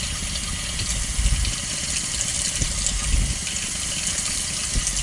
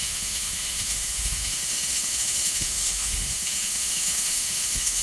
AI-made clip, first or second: second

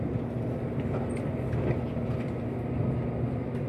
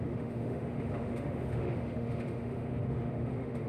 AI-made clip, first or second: second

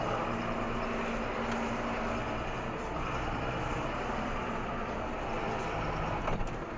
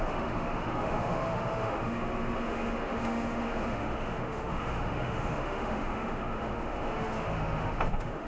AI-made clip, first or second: second